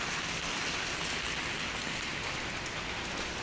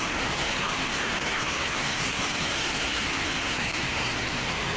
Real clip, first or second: first